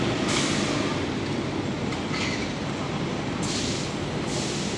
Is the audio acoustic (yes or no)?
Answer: yes